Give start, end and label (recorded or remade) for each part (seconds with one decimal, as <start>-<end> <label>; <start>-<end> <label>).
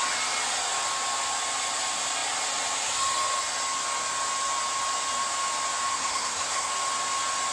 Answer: 0.0-5.9 recorded; 5.9-6.7 remade; 6.7-7.5 recorded